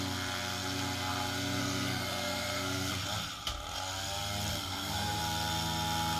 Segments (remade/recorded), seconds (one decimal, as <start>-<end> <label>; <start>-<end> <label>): 0.0-1.6 recorded; 1.6-2.9 remade; 2.9-4.5 recorded; 4.5-5.2 remade; 5.2-6.2 recorded